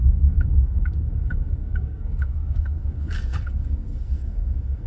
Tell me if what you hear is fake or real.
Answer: fake